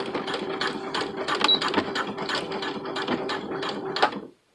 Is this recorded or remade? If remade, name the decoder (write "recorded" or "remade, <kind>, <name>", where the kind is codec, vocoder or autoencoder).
recorded